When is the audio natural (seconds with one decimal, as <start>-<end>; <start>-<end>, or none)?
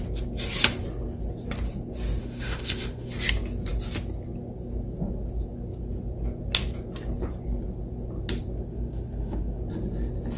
0.0-2.2; 3.1-8.7; 9.6-10.4